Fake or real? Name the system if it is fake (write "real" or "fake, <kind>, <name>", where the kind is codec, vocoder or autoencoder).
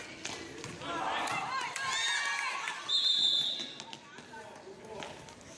real